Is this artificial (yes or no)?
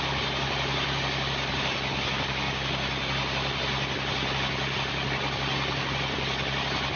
no